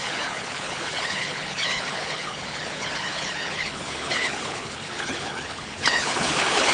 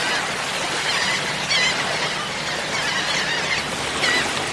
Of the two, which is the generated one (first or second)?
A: first